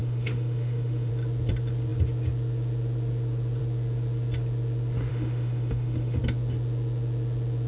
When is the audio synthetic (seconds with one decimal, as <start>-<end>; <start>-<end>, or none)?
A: 0.0-1.1; 5.1-6.2